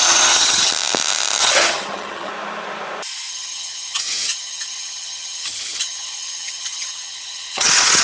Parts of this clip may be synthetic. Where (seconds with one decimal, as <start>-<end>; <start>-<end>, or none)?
0.0-0.7; 1.4-2.3; 3.3-8.0